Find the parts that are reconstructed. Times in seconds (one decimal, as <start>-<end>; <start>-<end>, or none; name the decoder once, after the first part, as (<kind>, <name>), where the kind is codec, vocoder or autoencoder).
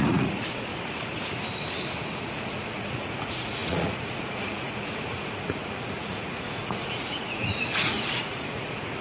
0.0-0.7 (vocoder, Vocos); 2.1-9.0